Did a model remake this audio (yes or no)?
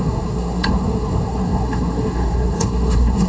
yes